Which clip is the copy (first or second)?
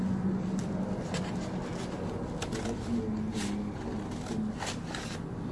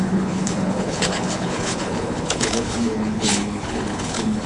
second